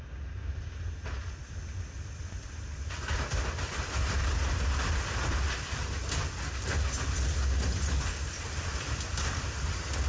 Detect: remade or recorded recorded